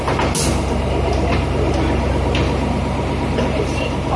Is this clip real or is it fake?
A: real